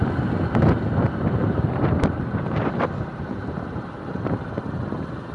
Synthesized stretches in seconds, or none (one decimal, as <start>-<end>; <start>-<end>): 1.4-4.6